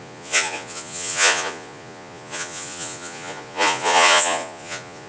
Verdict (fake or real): fake